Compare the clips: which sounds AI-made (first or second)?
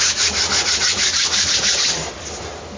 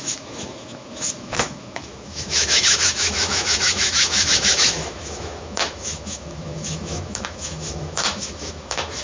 second